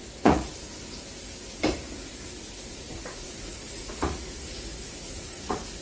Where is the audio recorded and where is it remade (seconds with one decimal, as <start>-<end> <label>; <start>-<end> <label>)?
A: 0.0-0.5 remade; 0.5-2.7 recorded; 2.7-5.8 remade